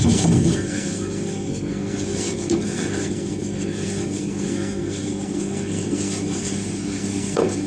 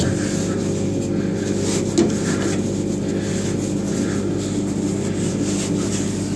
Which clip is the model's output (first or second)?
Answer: first